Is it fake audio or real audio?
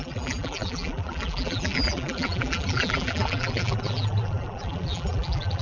fake